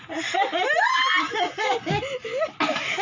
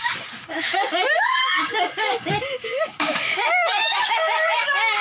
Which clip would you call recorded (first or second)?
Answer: first